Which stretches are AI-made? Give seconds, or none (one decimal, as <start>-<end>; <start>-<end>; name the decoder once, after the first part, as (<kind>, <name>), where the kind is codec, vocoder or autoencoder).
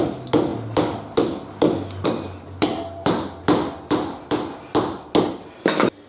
none